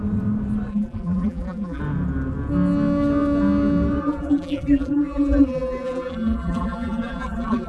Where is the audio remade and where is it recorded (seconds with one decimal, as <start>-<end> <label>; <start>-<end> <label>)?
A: 0.0-0.7 recorded; 0.7-1.8 remade; 1.8-4.0 recorded; 4.0-7.7 remade